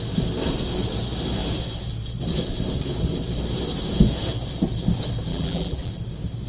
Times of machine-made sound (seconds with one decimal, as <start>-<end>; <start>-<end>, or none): 5.3-5.9